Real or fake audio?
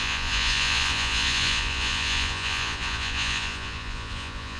fake